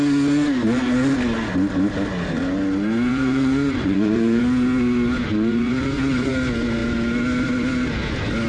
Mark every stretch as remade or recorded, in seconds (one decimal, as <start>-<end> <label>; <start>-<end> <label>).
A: 0.0-3.1 recorded; 3.1-4.4 remade; 4.4-5.3 recorded; 5.3-6.3 remade; 6.3-8.5 recorded